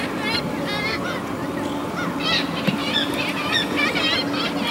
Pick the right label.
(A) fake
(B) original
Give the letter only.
B